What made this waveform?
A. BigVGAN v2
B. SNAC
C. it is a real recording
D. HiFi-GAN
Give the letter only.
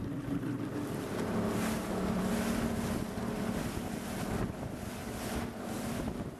C